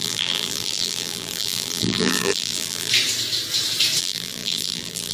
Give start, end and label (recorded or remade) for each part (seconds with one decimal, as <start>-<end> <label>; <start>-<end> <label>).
0.0-2.9 remade; 2.9-4.0 recorded; 4.0-5.1 remade